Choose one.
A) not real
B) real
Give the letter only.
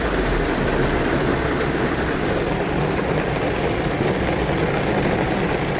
B